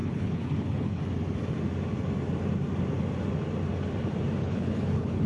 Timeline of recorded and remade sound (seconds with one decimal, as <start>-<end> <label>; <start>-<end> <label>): 0.0-1.0 remade; 1.0-4.4 recorded; 4.4-5.3 remade

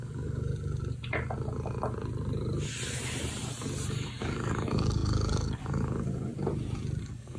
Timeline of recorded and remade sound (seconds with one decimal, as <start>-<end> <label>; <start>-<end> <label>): 0.0-0.5 remade; 0.5-3.9 recorded; 3.9-6.3 remade; 6.3-7.0 recorded; 7.0-7.4 remade

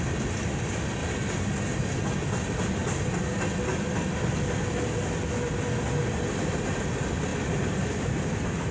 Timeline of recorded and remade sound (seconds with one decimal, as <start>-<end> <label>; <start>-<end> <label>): 0.0-8.7 recorded

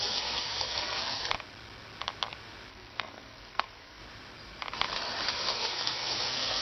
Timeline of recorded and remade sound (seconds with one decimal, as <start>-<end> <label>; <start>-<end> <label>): 0.0-1.2 remade; 1.2-2.7 recorded; 2.7-4.0 remade; 4.0-5.3 recorded; 5.3-6.6 remade